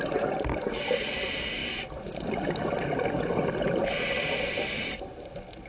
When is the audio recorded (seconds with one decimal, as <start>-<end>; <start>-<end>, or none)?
0.0-5.7